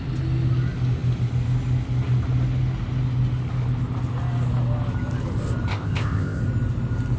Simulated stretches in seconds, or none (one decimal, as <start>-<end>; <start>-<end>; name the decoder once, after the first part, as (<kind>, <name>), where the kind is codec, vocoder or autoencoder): 5.7-6.4 (codec, ZipCodec)